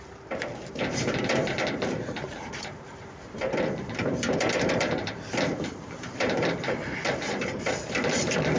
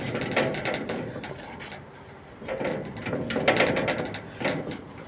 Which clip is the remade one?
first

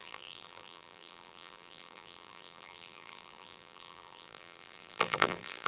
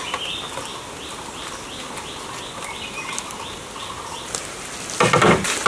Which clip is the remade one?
first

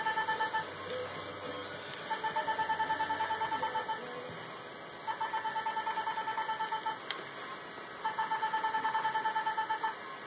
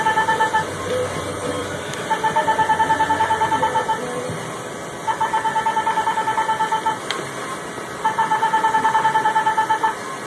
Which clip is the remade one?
second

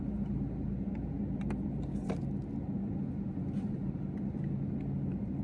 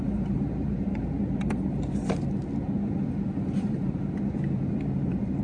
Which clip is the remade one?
second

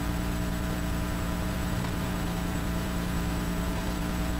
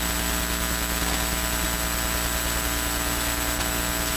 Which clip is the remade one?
first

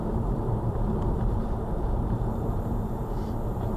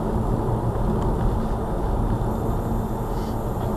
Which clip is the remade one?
first